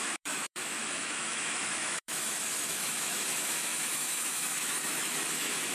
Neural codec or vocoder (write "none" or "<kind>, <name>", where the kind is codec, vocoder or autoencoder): autoencoder, DAC-VAE